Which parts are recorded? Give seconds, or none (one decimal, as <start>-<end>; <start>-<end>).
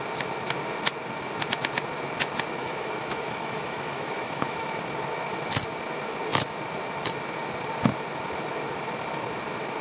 0.0-2.6; 4.8-9.8